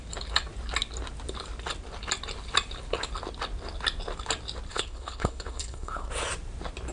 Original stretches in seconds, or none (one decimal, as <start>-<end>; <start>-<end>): 0.0-4.7; 6.1-6.9